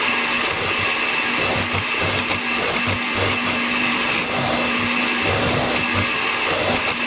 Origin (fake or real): real